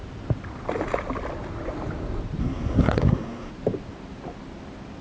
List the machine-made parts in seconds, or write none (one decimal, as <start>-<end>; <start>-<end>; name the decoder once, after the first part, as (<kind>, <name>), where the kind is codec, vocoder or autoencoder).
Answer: 2.4-3.5 (codec, SNAC)

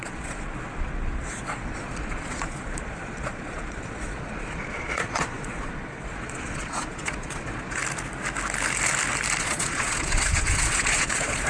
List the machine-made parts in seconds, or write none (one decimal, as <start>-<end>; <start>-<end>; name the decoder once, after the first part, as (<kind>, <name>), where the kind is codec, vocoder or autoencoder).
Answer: 0.0-7.8 (vocoder, Vocos); 9.4-11.5

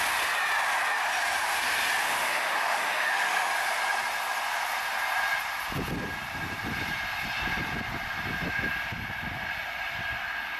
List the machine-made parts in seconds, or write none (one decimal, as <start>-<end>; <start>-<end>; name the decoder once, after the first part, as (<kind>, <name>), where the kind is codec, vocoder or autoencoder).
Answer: 2.0-3.5 (autoencoder, DAC-VAE)

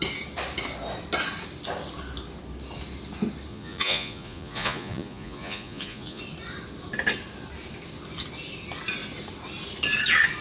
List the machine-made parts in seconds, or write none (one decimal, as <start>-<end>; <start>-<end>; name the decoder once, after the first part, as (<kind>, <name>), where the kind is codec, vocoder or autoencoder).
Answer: 3.5-6.2 (vocoder, Vocos)